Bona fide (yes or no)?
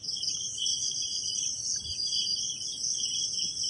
no